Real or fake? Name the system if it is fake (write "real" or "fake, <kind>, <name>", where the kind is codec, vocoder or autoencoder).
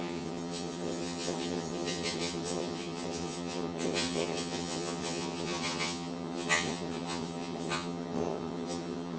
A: fake, vocoder, HiFi-GAN